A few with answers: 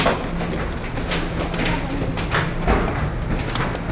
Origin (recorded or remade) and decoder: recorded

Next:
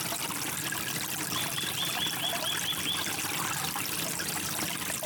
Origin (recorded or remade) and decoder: recorded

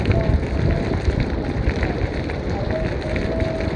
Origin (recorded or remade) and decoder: recorded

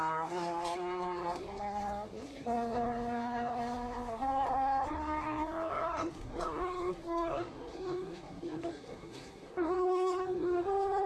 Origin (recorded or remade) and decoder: remade, codec, SNAC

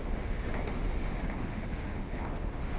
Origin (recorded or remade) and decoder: remade, autoencoder, DAC-VAE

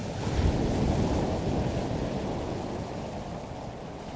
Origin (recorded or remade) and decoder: recorded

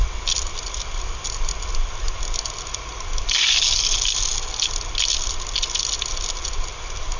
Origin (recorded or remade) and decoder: recorded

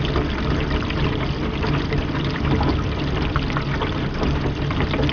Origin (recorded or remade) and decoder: recorded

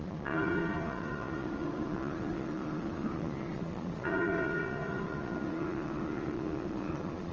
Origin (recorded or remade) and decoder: remade, vocoder, Vocos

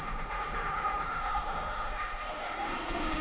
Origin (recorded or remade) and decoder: remade, autoencoder, DAC-VAE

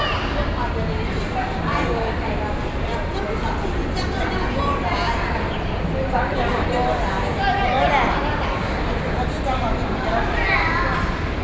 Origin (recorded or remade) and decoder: recorded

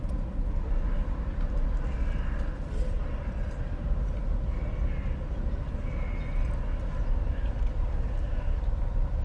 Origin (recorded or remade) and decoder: recorded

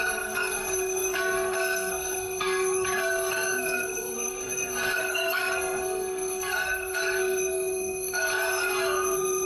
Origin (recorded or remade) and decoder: remade, codec, SNAC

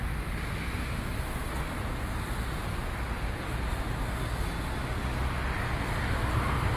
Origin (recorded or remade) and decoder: recorded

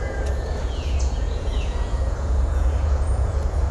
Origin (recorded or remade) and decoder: remade, vocoder, Vocos